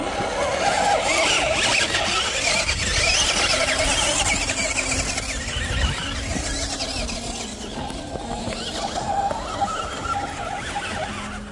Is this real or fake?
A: real